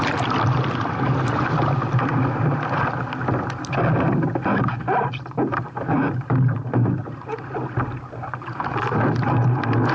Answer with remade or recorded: recorded